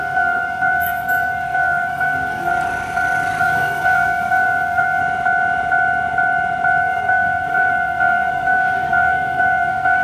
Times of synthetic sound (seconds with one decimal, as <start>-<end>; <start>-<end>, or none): 0.0-2.5; 3.4-5.0; 6.8-10.0